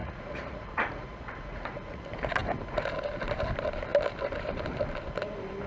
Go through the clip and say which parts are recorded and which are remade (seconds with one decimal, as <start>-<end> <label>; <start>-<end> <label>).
0.0-2.0 remade; 2.0-5.7 recorded